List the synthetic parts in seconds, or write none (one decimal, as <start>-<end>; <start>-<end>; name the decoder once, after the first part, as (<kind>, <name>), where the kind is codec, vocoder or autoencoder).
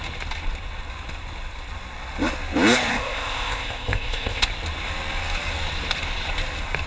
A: 2.9-4.5 (codec, ZipCodec)